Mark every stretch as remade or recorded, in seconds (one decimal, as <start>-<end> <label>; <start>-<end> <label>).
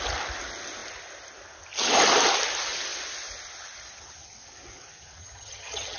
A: 0.0-5.2 recorded; 5.2-6.0 remade